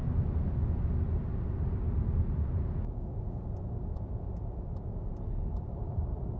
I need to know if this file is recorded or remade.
recorded